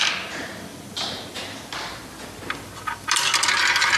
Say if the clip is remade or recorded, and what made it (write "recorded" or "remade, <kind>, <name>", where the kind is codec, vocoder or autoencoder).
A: remade, vocoder, BigVGAN v2